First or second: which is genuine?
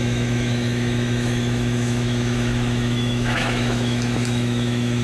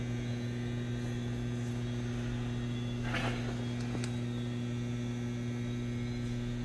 second